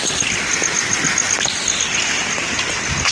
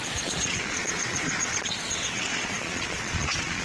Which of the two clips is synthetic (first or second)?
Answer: second